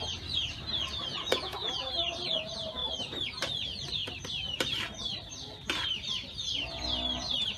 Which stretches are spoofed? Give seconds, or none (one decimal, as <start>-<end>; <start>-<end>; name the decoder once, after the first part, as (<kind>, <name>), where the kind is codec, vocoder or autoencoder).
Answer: 1.1-1.9 (vocoder, Vocos)